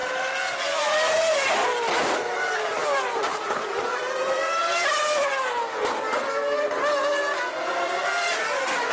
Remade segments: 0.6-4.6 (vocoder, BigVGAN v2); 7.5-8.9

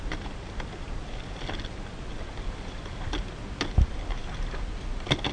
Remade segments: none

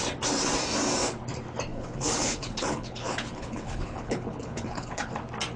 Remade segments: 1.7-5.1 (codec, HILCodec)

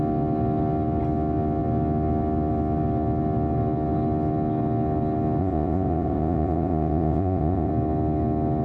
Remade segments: 5.4-7.7 (vocoder, Vocos)

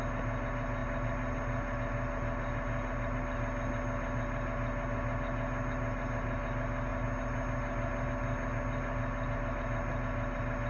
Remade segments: none

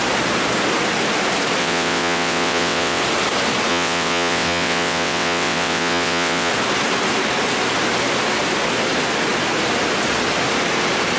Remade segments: 1.6-3.0 (vocoder, WaveNeXt); 3.7-6.5

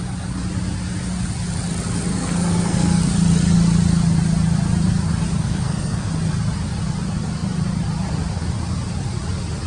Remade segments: 2.1-3.0 (codec, SNAC); 5.4-6.1

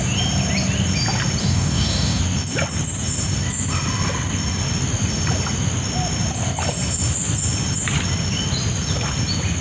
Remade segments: 1.4-2.2 (codec, DAC)